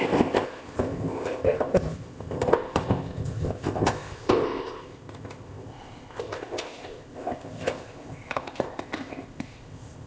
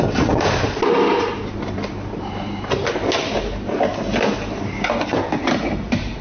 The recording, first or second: second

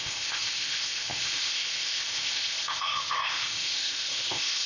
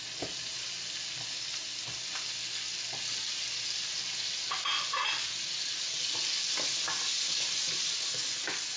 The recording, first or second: second